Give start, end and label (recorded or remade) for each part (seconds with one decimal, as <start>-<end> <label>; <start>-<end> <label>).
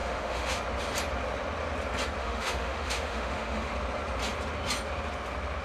0.0-0.6 remade; 0.6-2.2 recorded; 2.2-3.7 remade; 3.7-5.6 recorded